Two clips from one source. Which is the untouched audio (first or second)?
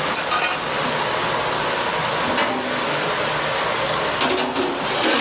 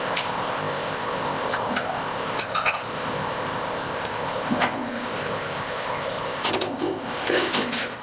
first